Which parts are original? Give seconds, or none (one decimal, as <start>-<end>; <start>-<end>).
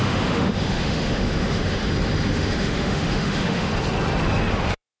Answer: 1.8-2.3; 3.7-4.5